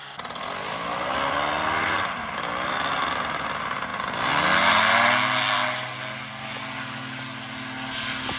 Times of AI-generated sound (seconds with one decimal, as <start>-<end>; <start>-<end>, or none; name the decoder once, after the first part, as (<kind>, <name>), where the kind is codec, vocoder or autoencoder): none